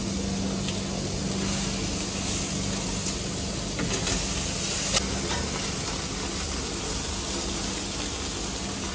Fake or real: real